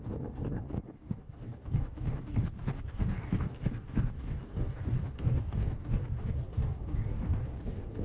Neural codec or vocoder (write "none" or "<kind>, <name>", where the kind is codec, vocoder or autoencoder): codec, DAC